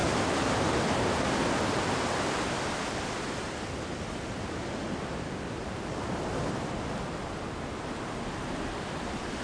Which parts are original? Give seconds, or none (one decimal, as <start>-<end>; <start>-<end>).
0.0-9.4